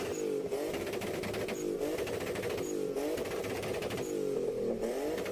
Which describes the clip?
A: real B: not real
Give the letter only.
A